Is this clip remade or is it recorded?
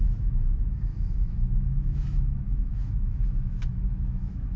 remade